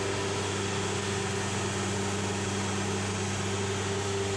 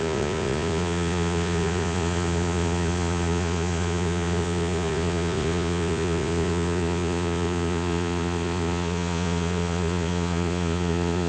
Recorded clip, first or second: first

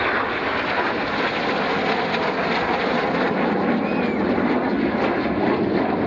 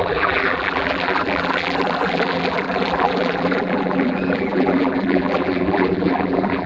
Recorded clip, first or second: first